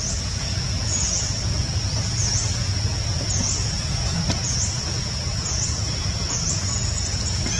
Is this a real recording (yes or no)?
no